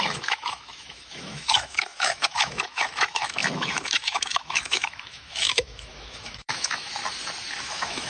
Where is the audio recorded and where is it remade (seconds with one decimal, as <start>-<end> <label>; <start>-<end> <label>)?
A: 0.0-7.0 remade; 7.0-7.6 recorded; 7.6-8.1 remade